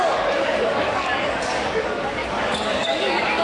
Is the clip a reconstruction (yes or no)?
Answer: yes